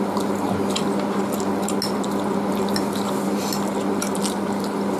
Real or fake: real